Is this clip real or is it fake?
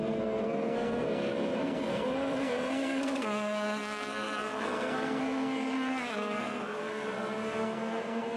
fake